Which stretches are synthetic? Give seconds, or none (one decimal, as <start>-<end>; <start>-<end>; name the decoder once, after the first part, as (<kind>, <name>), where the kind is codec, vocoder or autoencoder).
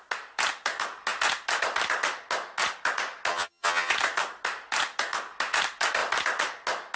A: 3.3-3.9 (vocoder, HiFi-GAN)